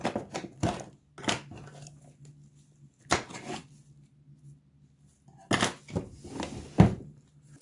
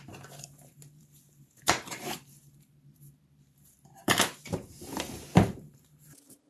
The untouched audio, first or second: first